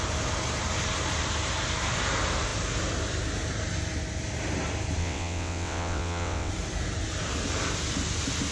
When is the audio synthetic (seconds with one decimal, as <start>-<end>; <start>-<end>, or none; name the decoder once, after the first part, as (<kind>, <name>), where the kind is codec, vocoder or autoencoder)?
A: 5.0-6.5 (vocoder, WaveNeXt)